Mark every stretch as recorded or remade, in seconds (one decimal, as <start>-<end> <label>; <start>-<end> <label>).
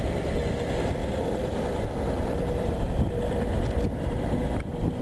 0.0-5.0 remade